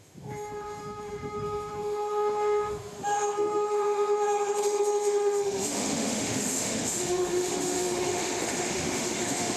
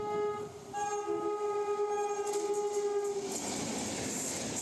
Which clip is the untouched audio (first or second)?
second